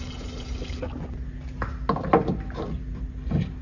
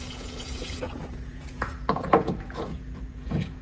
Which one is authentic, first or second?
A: first